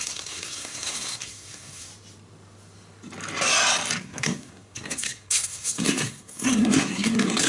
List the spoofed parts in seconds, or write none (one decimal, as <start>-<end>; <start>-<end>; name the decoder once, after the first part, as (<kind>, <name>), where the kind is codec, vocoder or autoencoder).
0.0-1.9 (codec, SNAC); 4.0-7.5